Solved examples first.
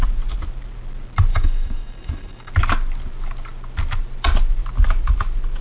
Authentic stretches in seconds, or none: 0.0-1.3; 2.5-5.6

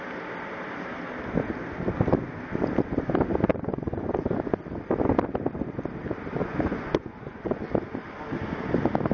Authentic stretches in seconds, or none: 0.0-3.5; 4.1-6.4; 7.6-9.1

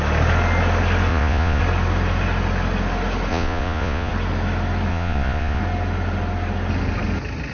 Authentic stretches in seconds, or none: 0.0-1.1; 1.6-3.3; 4.1-4.9; 5.6-7.5

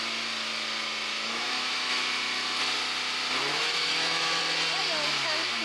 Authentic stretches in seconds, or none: 0.0-1.1; 2.0-3.5; 4.4-5.6

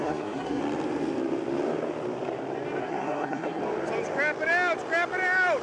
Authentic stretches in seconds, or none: 0.6-2.8; 3.6-5.6

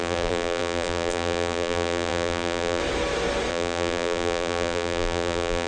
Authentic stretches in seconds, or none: 2.8-3.5